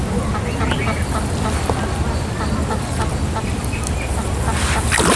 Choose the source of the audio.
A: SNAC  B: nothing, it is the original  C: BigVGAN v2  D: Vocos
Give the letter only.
B